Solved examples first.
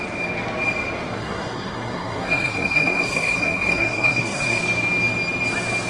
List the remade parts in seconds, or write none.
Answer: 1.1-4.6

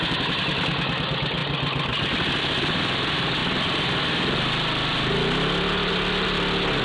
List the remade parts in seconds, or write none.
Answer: none

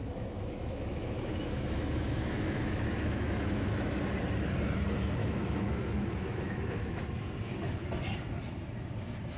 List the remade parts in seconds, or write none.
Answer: 0.0-4.0; 5.2-7.0

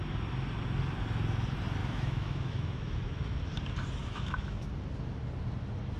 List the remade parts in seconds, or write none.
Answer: 1.8-3.4; 4.0-4.7